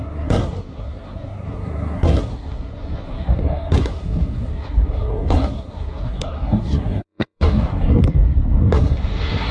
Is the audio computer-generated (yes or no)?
yes